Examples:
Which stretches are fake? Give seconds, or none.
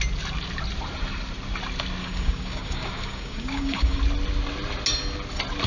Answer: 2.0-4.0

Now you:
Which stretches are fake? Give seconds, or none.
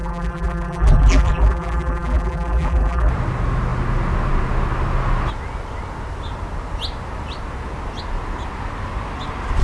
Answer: 0.0-3.1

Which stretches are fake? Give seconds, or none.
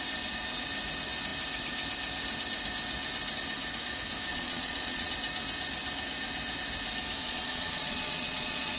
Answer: 4.3-5.1; 7.2-8.8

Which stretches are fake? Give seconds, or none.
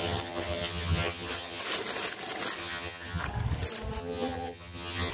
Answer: 0.0-1.6; 2.6-3.2; 4.0-5.1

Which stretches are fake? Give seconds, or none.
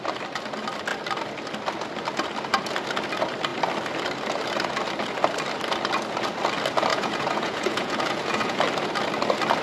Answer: 6.9-8.6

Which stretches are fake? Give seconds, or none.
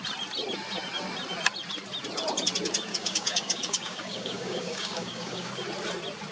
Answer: 2.9-5.5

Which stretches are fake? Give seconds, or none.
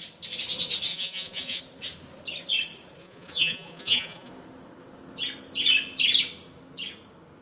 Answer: 0.9-1.6; 3.0-4.3